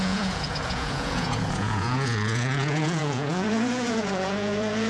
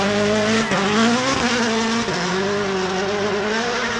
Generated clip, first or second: first